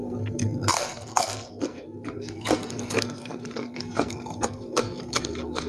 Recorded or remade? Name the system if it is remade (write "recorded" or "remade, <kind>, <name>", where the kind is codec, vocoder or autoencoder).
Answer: remade, codec, SNAC